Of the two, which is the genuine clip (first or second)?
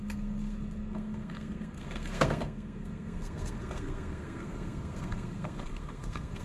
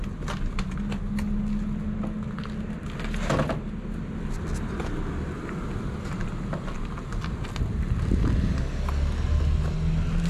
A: second